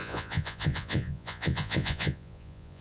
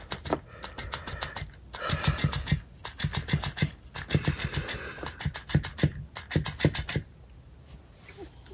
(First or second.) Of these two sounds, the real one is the second